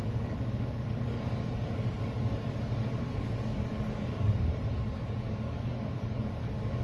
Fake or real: fake